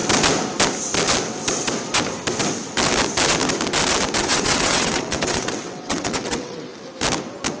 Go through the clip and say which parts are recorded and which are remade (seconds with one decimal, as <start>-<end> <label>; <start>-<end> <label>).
0.0-4.2 recorded; 4.2-6.7 remade; 6.7-7.6 recorded